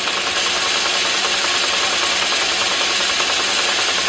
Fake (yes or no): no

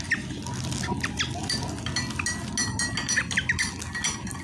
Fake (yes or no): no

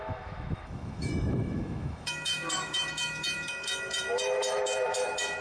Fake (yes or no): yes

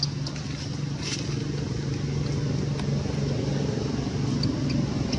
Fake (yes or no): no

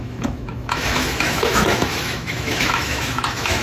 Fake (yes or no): yes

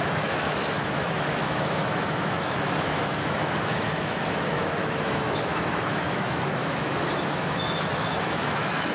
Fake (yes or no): yes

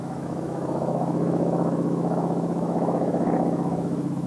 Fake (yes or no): yes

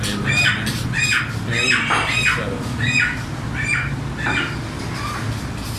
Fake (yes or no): no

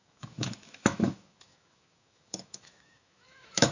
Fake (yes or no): yes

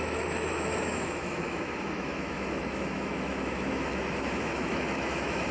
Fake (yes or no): yes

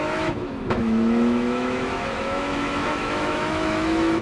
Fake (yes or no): yes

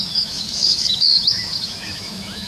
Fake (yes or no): yes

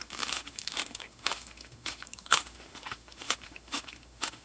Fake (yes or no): yes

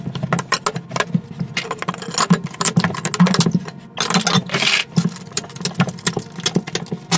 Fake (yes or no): no